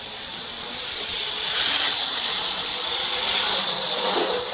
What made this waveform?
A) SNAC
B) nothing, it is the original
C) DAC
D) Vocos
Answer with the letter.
D